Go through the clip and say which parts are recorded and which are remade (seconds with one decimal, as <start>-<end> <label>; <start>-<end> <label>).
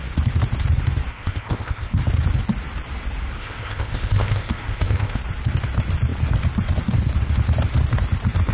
0.0-1.1 recorded; 1.1-2.0 remade; 2.0-3.4 recorded; 3.4-5.2 remade; 5.2-8.5 recorded